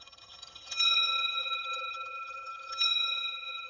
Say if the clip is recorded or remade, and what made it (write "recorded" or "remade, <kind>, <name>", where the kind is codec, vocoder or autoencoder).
remade, vocoder, HiFi-GAN